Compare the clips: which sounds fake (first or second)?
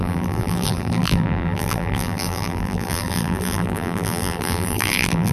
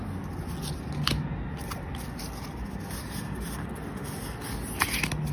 first